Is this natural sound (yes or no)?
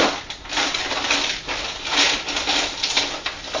yes